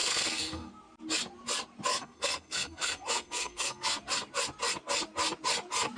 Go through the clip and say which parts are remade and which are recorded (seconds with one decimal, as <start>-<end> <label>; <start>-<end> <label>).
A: 0.0-0.7 remade; 0.7-1.9 recorded; 1.9-4.0 remade; 4.0-6.0 recorded